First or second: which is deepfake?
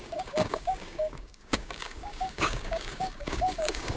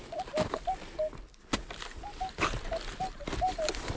first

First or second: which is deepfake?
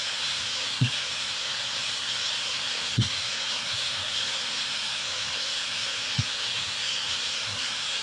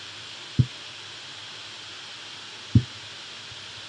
first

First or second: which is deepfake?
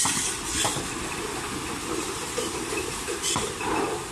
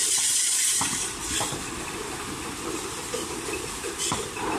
second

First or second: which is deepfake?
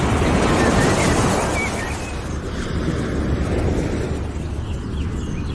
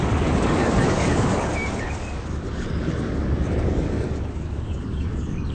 second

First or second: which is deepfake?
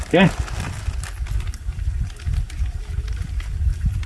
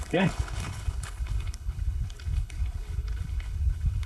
second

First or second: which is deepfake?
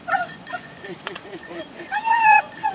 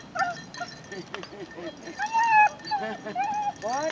first